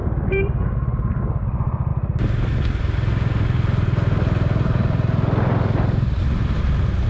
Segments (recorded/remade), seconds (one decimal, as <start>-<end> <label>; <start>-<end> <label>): 0.0-1.2 remade; 1.2-7.1 recorded

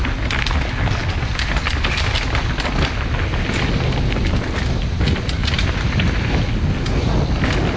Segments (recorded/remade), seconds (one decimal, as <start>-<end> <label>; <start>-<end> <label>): 0.0-5.4 recorded; 5.4-6.4 remade; 6.4-7.8 recorded

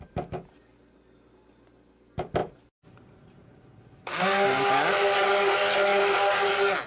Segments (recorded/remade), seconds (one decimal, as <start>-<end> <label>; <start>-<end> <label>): 0.0-6.9 recorded

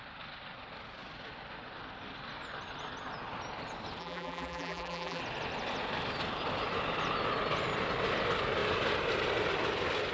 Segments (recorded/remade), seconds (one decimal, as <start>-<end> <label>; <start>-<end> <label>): 0.0-4.0 recorded; 4.0-5.2 remade; 5.2-10.1 recorded

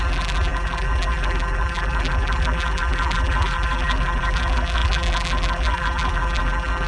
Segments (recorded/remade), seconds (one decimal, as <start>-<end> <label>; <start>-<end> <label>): 0.0-6.9 remade